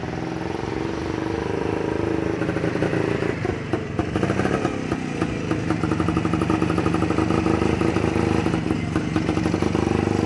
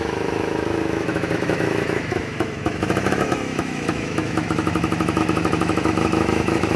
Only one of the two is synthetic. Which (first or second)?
second